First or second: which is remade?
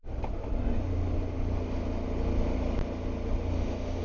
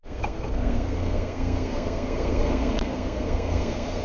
second